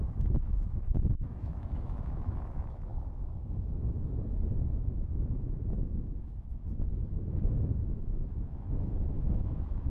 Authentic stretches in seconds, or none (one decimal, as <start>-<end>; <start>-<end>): none